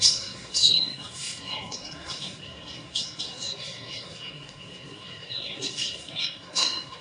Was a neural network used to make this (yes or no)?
yes